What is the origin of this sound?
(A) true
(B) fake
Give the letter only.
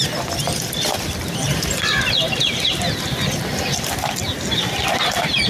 A